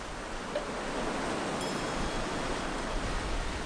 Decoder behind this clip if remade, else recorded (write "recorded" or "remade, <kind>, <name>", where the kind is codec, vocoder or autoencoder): recorded